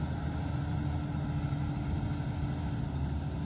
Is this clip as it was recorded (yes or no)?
yes